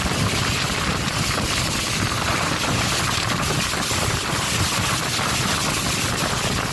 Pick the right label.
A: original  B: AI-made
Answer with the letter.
A